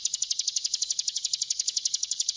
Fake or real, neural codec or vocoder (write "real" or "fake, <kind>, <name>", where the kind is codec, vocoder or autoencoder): fake, codec, DAC